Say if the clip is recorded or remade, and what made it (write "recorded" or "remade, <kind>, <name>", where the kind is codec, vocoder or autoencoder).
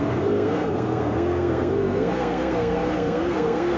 remade, codec, SNAC